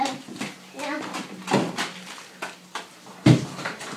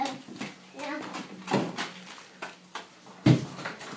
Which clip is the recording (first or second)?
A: second